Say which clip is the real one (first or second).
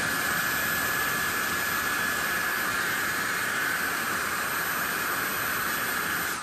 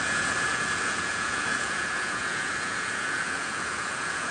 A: first